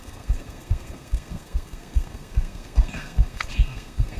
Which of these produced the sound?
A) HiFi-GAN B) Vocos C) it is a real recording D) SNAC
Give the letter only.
D